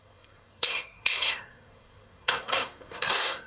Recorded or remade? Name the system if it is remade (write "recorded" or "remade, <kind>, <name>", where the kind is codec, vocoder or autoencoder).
remade, codec, SNAC